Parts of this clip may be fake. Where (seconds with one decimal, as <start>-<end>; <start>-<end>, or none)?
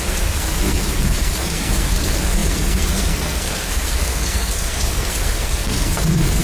0.0-6.4